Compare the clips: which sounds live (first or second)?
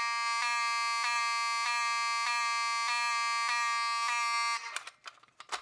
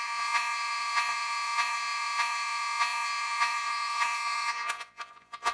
first